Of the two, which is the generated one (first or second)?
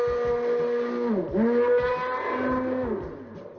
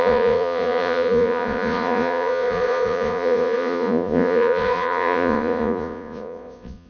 second